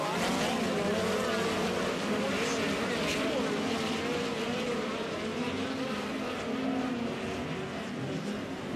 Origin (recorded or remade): recorded